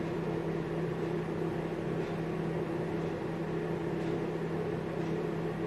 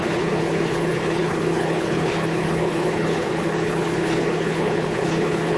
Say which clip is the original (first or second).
first